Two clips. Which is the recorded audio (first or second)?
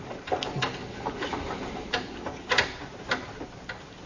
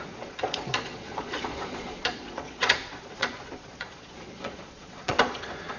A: first